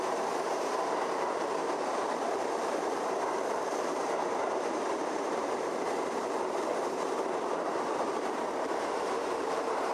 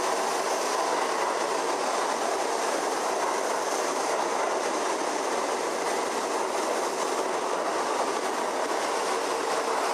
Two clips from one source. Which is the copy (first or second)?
first